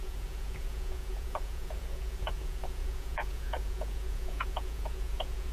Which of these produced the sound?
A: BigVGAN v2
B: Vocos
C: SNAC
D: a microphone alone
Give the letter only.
B